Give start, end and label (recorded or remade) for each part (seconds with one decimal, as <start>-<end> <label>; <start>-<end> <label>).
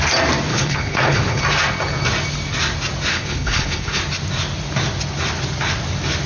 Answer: 0.0-0.5 recorded; 0.5-1.4 remade; 1.4-3.1 recorded; 3.1-4.0 remade; 4.0-6.3 recorded